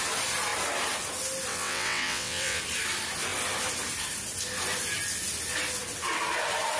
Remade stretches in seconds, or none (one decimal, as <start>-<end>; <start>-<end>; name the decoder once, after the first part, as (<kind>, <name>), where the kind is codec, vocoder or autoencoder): 1.5-2.6 (vocoder, WaveNeXt)